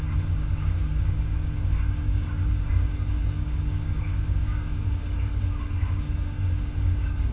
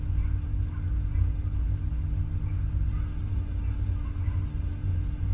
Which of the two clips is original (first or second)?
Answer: second